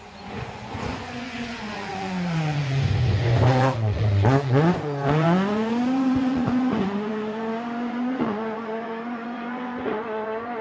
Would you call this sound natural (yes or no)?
no